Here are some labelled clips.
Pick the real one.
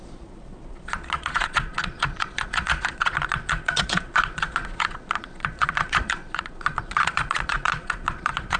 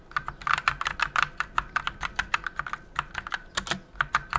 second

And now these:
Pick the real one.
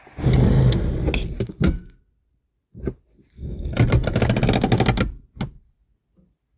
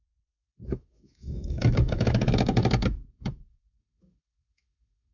first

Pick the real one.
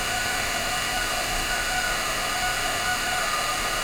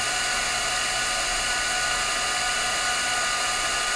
second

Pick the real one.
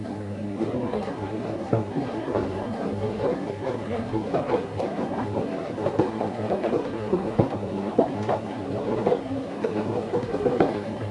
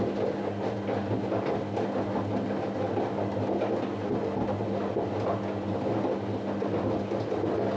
second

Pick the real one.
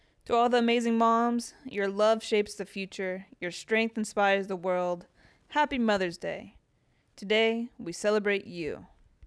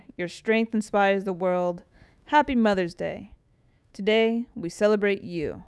first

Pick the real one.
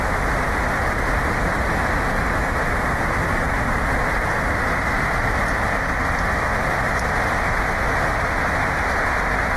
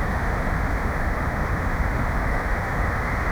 first